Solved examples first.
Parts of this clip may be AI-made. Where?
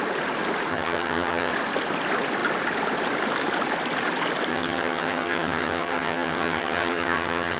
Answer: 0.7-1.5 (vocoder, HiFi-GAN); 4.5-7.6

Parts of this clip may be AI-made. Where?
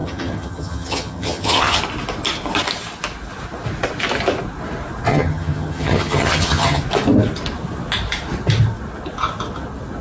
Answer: 0.0-1.8 (vocoder, HiFi-GAN); 5.1-6.8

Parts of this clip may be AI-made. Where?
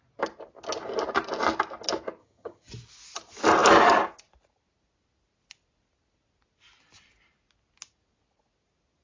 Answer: 2.2-2.7 (vocoder, HiFi-GAN)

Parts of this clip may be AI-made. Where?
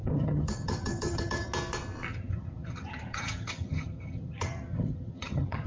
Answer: 0.0-1.5 (vocoder, HiFi-GAN); 2.1-5.7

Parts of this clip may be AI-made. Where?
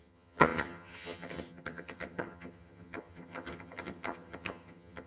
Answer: 0.0-5.1 (vocoder, HiFi-GAN)